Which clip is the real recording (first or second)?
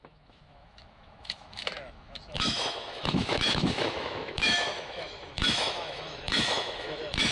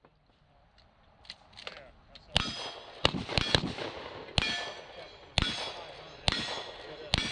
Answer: second